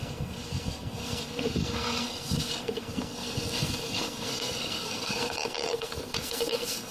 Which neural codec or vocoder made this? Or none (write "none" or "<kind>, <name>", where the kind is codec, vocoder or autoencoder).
codec, SNAC